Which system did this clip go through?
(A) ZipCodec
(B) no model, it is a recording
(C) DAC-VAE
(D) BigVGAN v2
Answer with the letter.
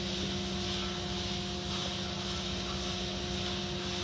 B